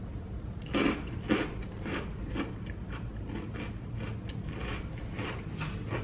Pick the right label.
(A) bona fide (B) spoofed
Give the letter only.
A